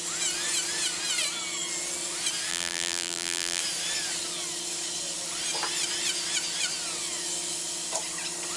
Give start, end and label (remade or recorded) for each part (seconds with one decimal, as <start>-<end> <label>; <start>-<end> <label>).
0.0-2.5 recorded; 2.5-3.6 remade; 3.6-8.6 recorded